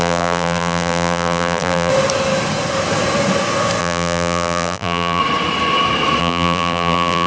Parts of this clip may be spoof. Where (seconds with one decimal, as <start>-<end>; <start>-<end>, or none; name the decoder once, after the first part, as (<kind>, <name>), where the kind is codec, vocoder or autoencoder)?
0.0-1.9 (vocoder, BigVGAN v2); 3.8-5.2; 6.2-7.3